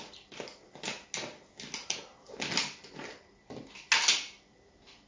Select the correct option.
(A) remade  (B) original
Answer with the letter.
B